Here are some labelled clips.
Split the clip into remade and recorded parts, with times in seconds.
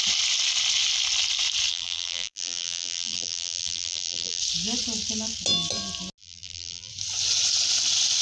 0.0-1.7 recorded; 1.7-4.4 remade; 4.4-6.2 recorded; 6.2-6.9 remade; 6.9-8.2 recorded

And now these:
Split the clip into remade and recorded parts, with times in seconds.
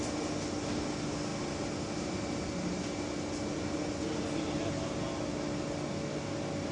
0.0-6.7 recorded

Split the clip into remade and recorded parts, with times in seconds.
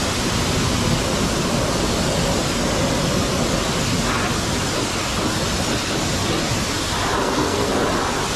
0.0-7.2 recorded; 7.2-7.7 remade; 7.7-8.4 recorded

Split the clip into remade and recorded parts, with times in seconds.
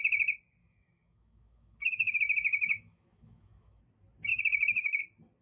0.0-0.6 recorded; 0.6-3.8 remade; 3.8-4.3 recorded; 4.3-5.0 remade; 5.0-5.4 recorded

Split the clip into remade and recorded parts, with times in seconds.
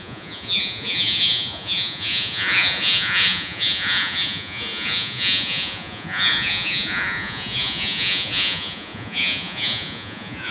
0.0-10.5 remade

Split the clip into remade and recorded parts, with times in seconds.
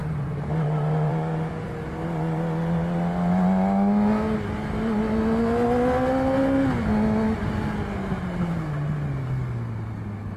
0.0-1.5 remade; 1.5-10.4 recorded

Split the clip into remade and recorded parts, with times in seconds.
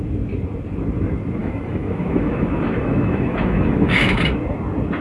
0.0-1.4 recorded; 1.4-4.3 remade; 4.3-5.0 recorded